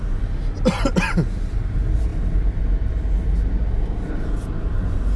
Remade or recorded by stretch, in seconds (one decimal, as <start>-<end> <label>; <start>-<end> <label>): 0.0-5.2 recorded